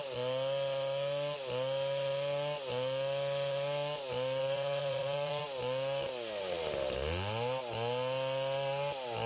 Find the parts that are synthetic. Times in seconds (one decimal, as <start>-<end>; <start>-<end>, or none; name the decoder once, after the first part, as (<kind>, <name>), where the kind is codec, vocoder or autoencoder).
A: 4.4-5.4 (vocoder, Vocos)